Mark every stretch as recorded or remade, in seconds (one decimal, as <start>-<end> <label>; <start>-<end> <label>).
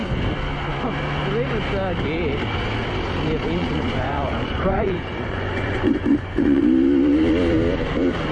0.0-3.6 recorded; 3.6-6.6 remade; 6.6-8.3 recorded